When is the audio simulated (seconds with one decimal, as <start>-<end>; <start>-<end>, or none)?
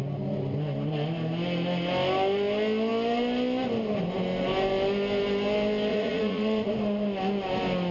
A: 5.9-6.7